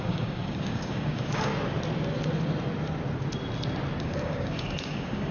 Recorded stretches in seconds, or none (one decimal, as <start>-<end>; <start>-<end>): 1.5-4.0